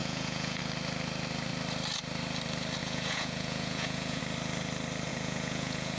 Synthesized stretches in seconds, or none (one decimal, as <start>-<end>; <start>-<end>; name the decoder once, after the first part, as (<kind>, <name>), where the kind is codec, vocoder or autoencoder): 0.0-0.6 (vocoder, Vocos); 2.8-4.2; 5.1-6.0